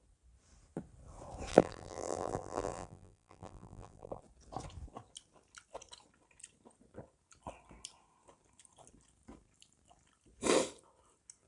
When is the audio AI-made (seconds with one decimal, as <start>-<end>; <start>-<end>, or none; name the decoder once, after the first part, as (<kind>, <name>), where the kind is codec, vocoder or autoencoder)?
1.5-4.2 (vocoder, BigVGAN v2)